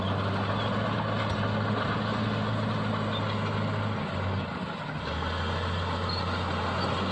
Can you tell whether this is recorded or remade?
recorded